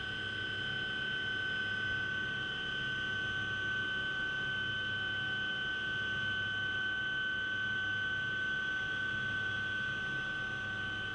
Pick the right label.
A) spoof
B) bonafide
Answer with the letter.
B